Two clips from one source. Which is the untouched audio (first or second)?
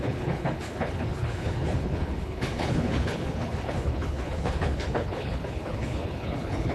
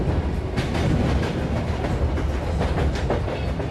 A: second